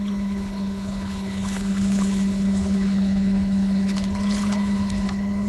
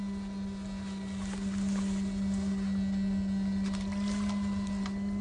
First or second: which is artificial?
first